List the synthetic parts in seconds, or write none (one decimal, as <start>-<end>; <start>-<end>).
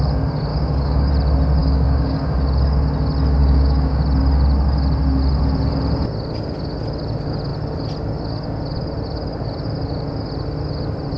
0.5-1.1; 1.6-2.3; 3.4-4.0